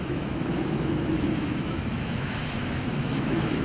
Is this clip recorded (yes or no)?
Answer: no